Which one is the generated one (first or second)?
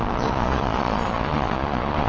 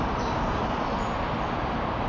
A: first